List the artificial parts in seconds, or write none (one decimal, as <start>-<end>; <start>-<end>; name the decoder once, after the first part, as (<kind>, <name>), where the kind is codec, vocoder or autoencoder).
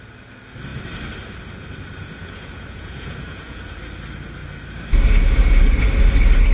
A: 2.0-3.8 (vocoder, Vocos)